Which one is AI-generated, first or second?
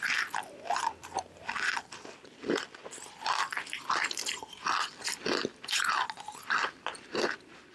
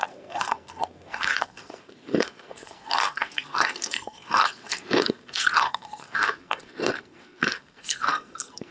second